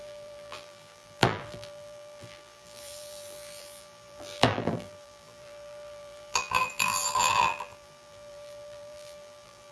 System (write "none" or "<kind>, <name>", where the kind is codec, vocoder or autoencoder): vocoder, BigVGAN v2